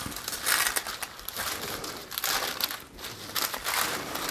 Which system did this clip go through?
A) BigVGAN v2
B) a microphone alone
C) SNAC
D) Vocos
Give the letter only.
B